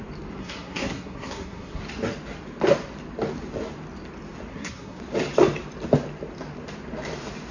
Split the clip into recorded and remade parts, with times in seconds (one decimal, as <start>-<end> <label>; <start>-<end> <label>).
0.0-0.4 recorded; 0.4-1.8 remade; 1.8-4.5 recorded; 4.5-5.0 remade; 5.0-7.5 recorded